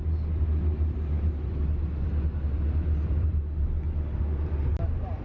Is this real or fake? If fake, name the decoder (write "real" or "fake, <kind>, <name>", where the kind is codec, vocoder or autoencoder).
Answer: real